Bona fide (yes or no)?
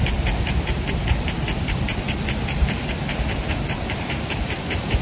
yes